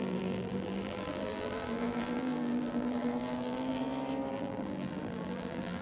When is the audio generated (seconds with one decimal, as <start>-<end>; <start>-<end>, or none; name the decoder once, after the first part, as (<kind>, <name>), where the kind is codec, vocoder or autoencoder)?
0.0-3.8 (vocoder, BigVGAN v2); 4.3-5.8